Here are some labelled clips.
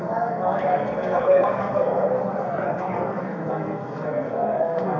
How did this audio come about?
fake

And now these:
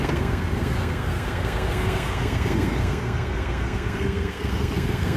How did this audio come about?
fake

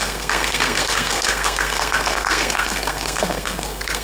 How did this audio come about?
fake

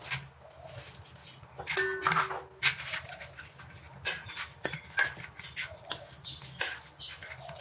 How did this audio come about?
real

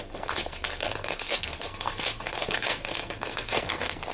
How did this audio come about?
fake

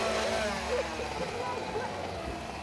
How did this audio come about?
real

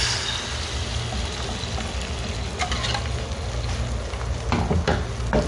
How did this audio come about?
real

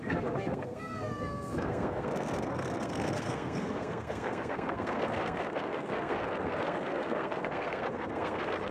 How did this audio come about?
fake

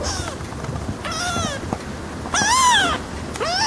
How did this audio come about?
real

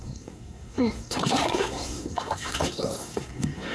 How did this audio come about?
fake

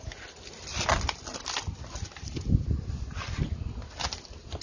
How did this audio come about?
real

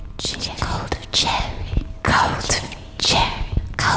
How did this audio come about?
real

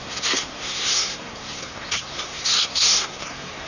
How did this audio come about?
fake